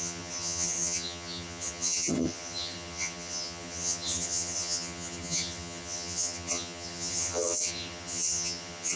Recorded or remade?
remade